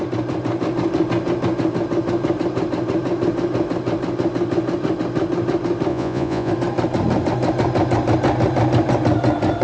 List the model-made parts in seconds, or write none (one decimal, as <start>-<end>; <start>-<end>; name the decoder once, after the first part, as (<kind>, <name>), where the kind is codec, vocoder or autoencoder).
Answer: 5.9-6.5 (vocoder, Vocos)